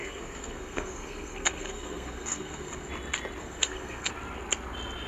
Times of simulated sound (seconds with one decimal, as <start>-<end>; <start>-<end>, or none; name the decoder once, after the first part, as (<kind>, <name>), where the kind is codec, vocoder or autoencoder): 0.0-2.9 (codec, SNAC); 3.4-4.1

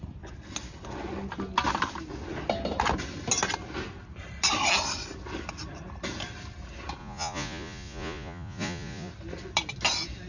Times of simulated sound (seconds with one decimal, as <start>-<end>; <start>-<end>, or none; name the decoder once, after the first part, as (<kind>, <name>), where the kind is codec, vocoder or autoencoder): 7.0-9.1 (vocoder, Vocos)

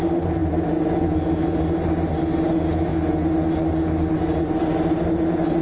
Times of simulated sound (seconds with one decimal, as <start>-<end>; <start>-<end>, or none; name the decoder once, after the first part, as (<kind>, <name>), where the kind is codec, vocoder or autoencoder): 0.0-2.9 (vocoder, BigVGAN v2); 4.1-5.6

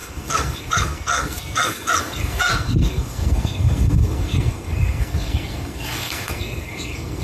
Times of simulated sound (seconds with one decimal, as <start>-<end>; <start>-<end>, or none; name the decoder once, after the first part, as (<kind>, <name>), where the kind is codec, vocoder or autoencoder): 0.0-7.2 (codec, SNAC)

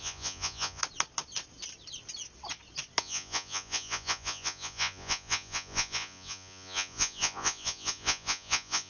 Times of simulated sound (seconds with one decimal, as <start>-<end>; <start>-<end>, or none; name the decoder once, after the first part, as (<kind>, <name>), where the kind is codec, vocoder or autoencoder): 0.0-0.8 (vocoder, Vocos); 3.0-8.9